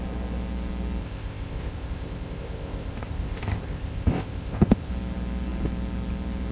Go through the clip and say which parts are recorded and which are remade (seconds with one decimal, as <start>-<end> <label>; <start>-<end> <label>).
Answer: 0.0-1.0 recorded; 1.0-4.9 remade; 4.9-6.5 recorded